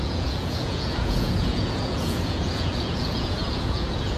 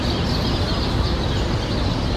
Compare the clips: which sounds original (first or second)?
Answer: second